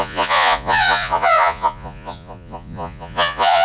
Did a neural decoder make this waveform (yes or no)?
yes